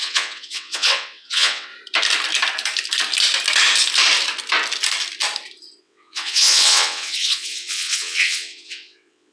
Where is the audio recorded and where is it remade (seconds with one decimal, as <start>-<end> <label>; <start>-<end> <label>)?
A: 0.0-1.7 remade; 1.7-5.8 recorded; 5.8-9.3 remade